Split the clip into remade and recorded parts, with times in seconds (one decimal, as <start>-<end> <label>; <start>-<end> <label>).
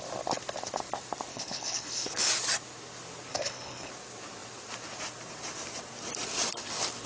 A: 0.0-1.3 recorded; 1.3-2.3 remade; 2.3-3.3 recorded; 3.3-3.9 remade; 3.9-7.1 recorded